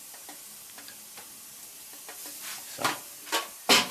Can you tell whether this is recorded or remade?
recorded